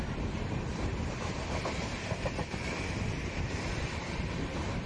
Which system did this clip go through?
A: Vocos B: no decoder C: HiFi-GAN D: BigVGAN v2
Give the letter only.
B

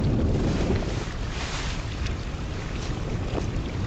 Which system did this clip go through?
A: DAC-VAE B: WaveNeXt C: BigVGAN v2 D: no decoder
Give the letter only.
C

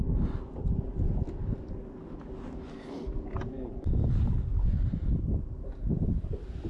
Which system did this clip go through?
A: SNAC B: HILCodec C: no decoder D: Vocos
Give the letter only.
C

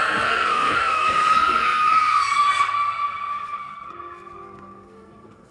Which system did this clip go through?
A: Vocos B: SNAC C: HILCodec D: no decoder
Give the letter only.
B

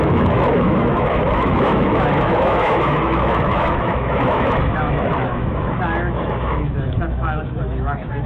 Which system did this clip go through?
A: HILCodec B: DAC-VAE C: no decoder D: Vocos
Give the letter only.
B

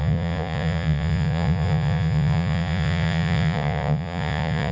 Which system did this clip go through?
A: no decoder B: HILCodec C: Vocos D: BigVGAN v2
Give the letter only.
C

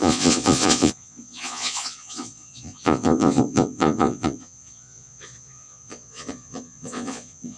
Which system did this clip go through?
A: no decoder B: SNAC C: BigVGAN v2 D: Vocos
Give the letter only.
D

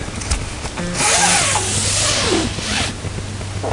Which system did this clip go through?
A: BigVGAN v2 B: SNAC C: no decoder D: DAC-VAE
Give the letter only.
C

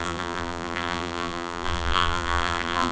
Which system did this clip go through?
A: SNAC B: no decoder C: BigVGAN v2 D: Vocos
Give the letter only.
C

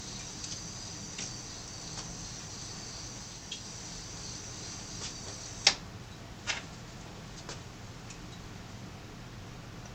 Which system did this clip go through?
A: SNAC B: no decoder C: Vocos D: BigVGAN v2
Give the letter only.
B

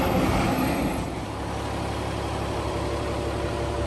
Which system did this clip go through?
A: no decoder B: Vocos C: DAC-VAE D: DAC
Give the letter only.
A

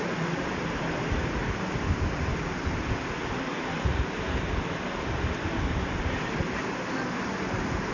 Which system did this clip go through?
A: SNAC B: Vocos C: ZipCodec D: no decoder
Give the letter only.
D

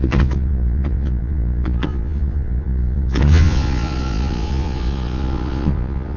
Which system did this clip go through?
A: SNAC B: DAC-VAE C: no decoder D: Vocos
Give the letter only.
D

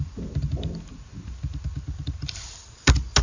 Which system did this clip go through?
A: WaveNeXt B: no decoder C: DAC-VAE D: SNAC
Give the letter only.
B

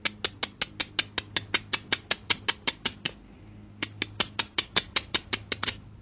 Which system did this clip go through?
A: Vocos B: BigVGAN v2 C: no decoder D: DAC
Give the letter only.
C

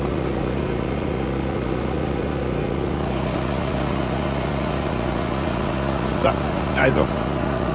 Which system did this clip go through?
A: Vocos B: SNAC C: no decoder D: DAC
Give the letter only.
A